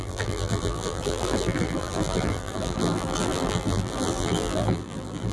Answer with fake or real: fake